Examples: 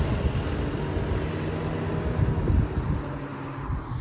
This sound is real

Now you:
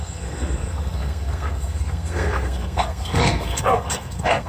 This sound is fake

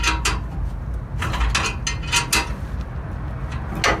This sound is real